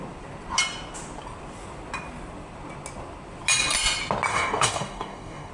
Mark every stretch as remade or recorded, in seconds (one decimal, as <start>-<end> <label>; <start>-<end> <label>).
0.0-4.3 recorded; 4.3-5.5 remade